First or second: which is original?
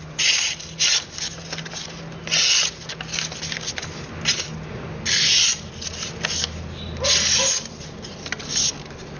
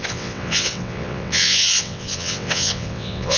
first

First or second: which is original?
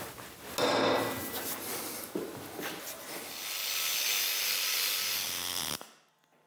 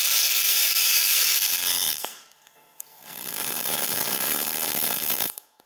first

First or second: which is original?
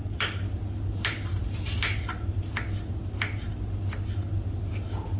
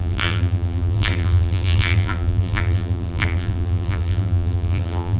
first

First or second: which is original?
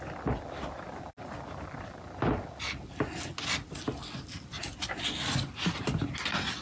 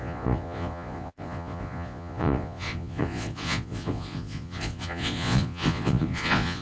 first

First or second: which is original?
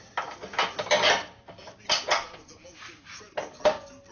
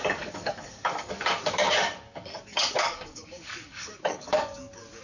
first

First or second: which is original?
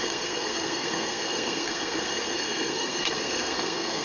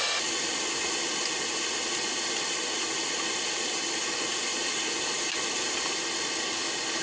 second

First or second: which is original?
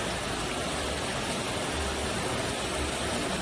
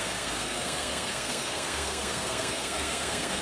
first